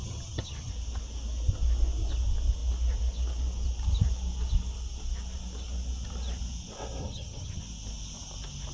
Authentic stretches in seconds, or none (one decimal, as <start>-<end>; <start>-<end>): 0.7-7.0; 7.6-8.7